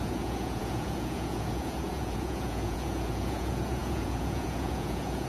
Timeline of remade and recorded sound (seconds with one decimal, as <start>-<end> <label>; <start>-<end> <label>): 0.0-5.3 remade